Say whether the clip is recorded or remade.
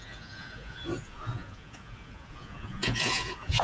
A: remade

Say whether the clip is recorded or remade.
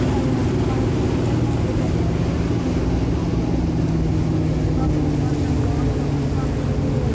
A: recorded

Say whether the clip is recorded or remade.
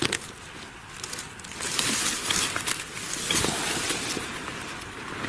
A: recorded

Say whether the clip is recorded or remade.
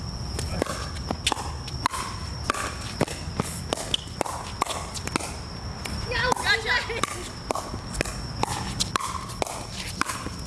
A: recorded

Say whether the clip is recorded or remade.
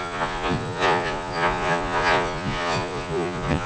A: remade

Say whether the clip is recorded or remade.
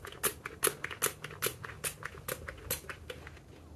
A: recorded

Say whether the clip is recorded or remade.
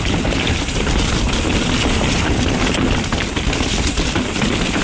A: recorded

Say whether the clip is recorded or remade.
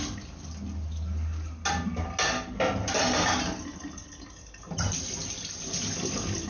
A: recorded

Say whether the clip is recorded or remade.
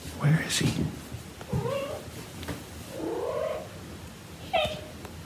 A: recorded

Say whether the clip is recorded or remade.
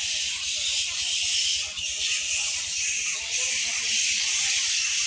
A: recorded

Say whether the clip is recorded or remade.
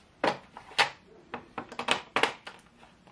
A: recorded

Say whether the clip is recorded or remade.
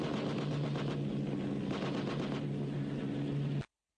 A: recorded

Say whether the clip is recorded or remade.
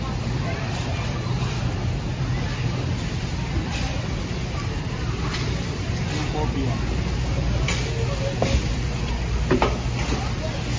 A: recorded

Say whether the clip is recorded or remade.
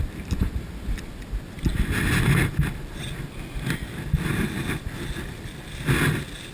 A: recorded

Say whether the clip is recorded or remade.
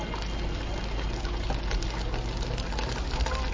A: recorded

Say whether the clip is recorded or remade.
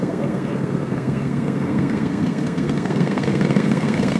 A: remade